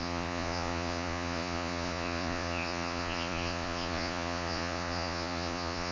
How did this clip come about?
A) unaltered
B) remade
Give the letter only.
B